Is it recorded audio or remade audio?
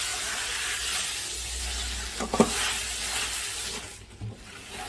recorded